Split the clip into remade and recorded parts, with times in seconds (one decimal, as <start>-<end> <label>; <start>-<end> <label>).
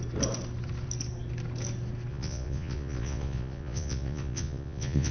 0.0-2.1 recorded; 2.1-5.1 remade